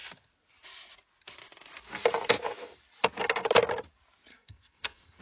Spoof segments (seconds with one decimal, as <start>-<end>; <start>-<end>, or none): 4.3-5.2